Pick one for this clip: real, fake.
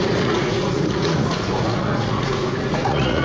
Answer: fake